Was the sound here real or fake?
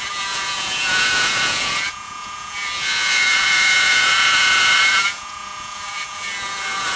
fake